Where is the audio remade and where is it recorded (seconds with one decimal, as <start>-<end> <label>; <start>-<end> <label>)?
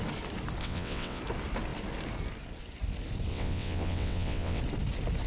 0.0-0.6 recorded; 0.6-1.2 remade; 1.2-3.3 recorded; 3.3-4.6 remade; 4.6-5.3 recorded